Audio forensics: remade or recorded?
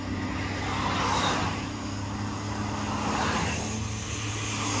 recorded